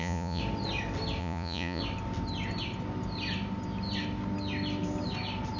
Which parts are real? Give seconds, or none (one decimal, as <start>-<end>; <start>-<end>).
0.4-1.2; 1.8-5.6